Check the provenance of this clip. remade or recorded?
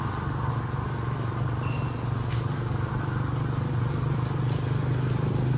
recorded